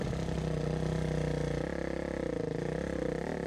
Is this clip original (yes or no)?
yes